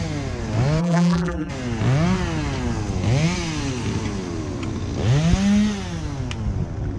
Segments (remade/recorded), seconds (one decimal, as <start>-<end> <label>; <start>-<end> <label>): 0.0-0.8 recorded; 0.8-1.5 remade; 1.5-7.0 recorded